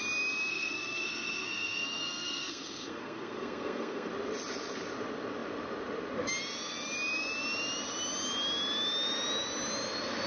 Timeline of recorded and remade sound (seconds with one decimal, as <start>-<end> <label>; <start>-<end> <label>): 0.0-0.5 recorded; 0.5-4.1 remade; 4.1-10.3 recorded

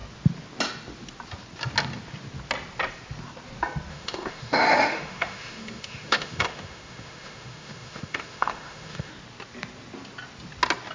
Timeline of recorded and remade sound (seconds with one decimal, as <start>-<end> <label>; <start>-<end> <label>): 0.0-3.9 recorded; 3.9-9.1 remade; 9.1-10.9 recorded

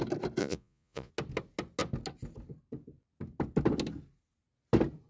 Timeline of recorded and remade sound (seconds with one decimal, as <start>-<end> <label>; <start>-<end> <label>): 0.0-0.4 recorded; 0.4-1.1 remade; 1.1-5.1 recorded

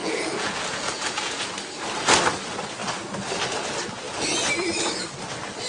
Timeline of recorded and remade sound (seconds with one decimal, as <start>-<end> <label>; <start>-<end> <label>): 0.0-1.5 remade; 1.5-5.7 recorded

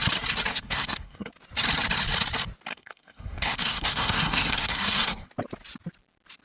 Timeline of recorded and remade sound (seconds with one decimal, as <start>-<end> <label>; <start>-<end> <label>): 0.0-0.5 recorded; 0.5-1.3 remade; 1.3-2.7 recorded; 2.7-5.3 remade; 5.3-6.4 recorded

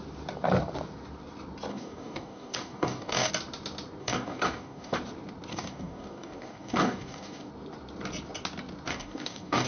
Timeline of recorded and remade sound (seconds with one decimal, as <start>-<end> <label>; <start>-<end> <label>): 0.0-1.7 recorded; 1.7-3.3 remade; 3.3-4.0 recorded; 4.0-5.0 remade; 5.0-5.5 recorded; 5.5-7.5 remade; 7.5-8.9 recorded; 8.9-9.7 remade

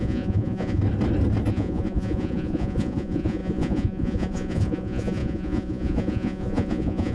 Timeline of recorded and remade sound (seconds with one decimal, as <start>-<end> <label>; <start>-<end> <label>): 0.0-0.8 remade; 0.8-1.5 recorded; 1.5-7.1 remade

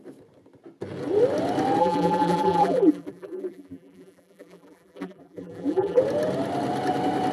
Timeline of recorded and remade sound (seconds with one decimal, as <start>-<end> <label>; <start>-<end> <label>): 0.0-1.8 recorded; 1.8-6.0 remade; 6.0-7.3 recorded